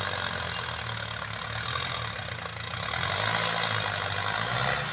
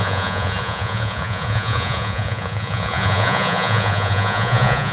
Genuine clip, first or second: first